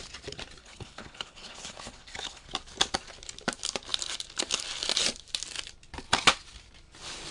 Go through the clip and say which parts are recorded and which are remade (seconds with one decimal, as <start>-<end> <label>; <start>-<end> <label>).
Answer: 0.0-0.6 recorded; 0.6-2.5 remade; 2.5-7.3 recorded